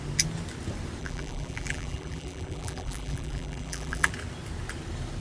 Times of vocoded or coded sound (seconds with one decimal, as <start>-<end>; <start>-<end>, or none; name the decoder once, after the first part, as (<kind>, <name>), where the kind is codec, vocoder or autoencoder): 1.0-4.1 (vocoder, BigVGAN v2)